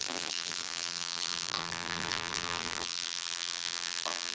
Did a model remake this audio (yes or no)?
yes